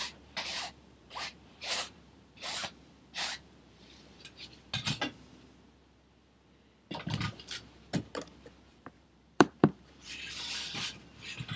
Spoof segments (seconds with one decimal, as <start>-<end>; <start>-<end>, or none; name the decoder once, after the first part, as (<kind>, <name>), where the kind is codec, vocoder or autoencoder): 0.5-4.2 (vocoder, BigVGAN v2); 8.7-10.1